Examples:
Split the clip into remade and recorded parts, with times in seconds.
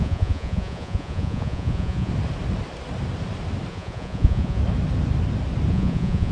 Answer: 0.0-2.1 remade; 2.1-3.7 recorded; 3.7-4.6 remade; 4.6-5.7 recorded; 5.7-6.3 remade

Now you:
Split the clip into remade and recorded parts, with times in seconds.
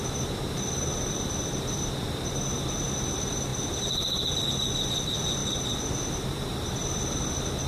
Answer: 0.0-3.5 remade; 3.5-4.4 recorded; 4.4-7.7 remade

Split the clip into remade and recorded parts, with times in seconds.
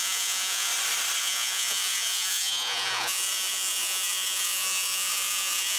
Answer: 0.0-0.7 remade; 0.7-1.2 recorded; 1.2-5.8 remade